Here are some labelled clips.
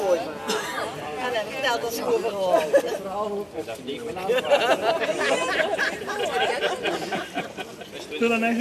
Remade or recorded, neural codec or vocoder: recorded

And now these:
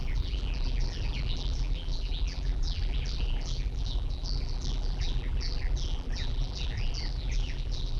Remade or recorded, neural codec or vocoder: remade, vocoder, BigVGAN v2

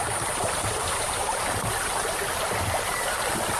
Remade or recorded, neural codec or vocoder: recorded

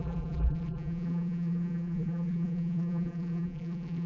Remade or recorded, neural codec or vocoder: remade, vocoder, BigVGAN v2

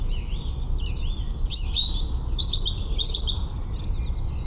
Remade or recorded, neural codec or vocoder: recorded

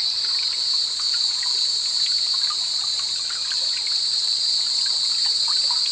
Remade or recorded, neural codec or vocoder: recorded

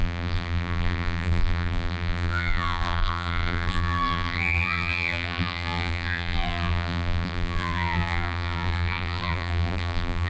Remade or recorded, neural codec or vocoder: remade, vocoder, BigVGAN v2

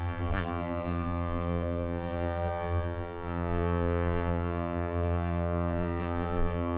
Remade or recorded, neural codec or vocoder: remade, vocoder, BigVGAN v2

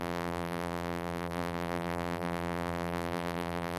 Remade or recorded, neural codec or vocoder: remade, vocoder, BigVGAN v2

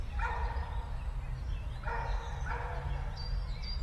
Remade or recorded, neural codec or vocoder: remade, vocoder, BigVGAN v2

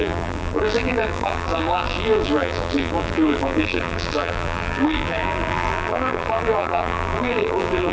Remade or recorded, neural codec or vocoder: remade, vocoder, BigVGAN v2